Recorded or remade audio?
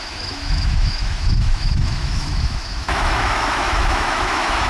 remade